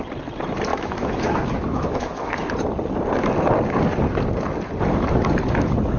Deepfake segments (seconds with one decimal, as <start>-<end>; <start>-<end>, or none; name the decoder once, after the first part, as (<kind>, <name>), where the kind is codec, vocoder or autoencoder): 0.7-2.3 (autoencoder, DAC-VAE)